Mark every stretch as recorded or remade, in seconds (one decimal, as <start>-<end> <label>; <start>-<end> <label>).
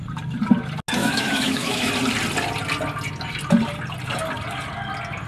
0.0-1.0 recorded; 1.0-1.9 remade; 1.9-5.3 recorded